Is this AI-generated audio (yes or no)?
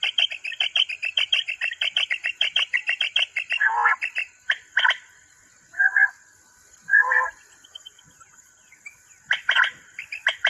no